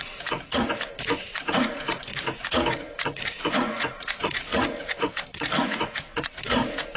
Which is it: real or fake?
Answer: fake